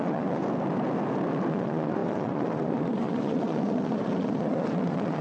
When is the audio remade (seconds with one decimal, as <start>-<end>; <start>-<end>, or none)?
0.0-0.4; 1.5-5.2